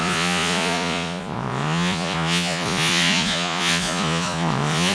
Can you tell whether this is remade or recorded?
remade